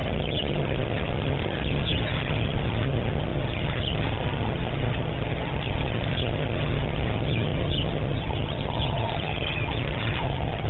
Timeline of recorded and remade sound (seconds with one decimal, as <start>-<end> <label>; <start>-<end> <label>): 0.0-10.7 remade